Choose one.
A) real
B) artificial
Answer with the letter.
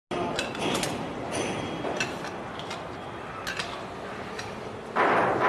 A